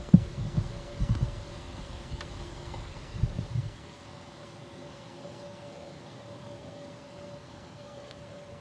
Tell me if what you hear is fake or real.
fake